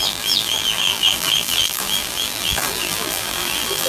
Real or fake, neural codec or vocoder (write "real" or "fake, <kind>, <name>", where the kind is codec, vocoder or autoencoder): fake, vocoder, BigVGAN v2